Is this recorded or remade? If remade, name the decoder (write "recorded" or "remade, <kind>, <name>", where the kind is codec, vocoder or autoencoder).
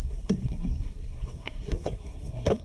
remade, codec, SNAC